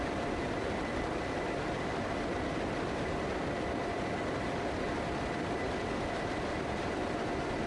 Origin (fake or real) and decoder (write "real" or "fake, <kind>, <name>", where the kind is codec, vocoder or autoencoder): real